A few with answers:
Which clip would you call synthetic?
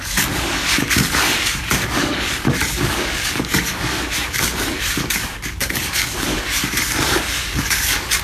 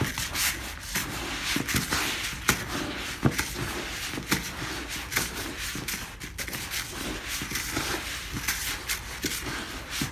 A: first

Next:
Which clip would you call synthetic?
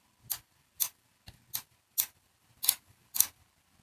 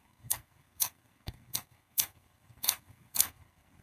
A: second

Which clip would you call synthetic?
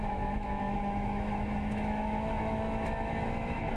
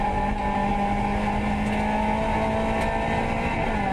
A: first